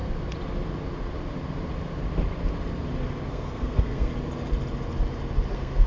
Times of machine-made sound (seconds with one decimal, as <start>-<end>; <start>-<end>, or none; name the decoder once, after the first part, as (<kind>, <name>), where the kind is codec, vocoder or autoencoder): 3.3-4.1 (codec, SNAC); 5.5-5.9